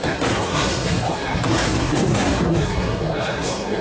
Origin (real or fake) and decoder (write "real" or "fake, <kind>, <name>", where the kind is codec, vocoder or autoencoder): fake, codec, SNAC